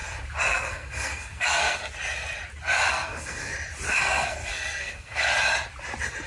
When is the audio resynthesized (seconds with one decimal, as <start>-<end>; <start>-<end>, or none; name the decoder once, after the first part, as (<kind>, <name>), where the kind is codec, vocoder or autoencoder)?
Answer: 0.5-1.8 (codec, SNAC); 2.9-3.5; 4.0-5.3